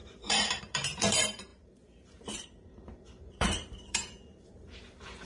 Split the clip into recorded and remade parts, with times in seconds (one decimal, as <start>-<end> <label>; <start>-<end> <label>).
0.0-5.3 remade

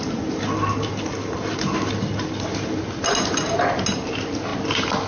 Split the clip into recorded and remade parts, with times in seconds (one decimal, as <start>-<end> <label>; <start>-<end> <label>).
0.0-5.1 recorded

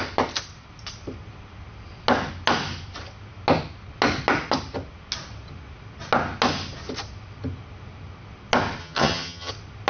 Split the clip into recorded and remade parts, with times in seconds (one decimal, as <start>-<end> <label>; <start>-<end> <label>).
0.0-8.8 recorded; 8.8-9.5 remade; 9.5-9.9 recorded